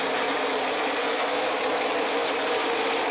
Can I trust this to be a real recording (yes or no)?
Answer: yes